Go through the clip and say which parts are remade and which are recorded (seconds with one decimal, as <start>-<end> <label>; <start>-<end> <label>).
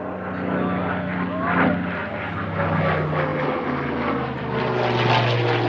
0.0-5.7 recorded